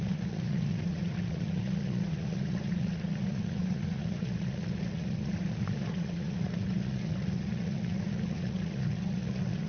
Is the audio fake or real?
fake